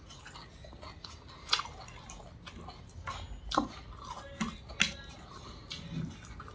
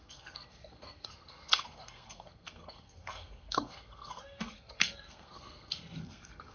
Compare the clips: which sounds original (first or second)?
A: first